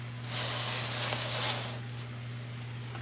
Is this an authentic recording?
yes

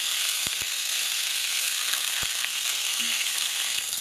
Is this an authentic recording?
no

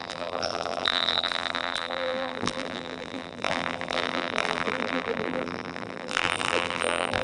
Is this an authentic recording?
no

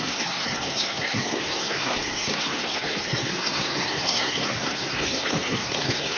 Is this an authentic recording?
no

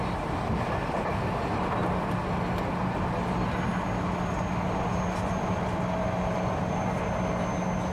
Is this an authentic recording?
yes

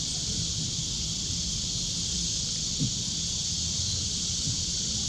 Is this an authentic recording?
yes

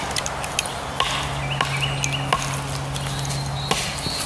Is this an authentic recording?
yes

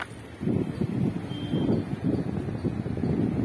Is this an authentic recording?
yes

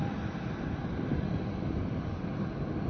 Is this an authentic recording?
no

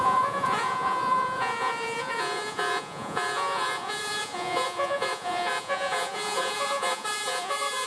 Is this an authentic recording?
no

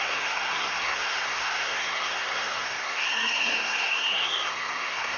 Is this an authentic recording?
no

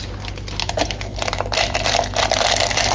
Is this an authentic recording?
yes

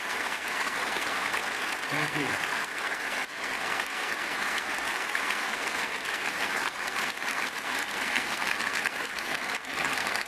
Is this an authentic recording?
no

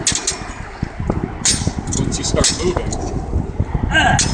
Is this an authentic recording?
yes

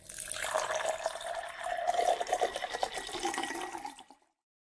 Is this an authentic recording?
yes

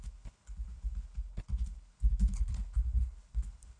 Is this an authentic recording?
no